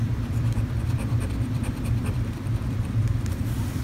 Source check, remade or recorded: remade